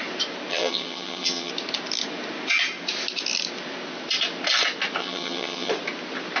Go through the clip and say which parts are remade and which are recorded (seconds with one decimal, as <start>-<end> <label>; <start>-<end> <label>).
0.0-0.5 recorded; 0.5-1.5 remade; 1.5-5.0 recorded; 5.0-5.7 remade; 5.7-6.4 recorded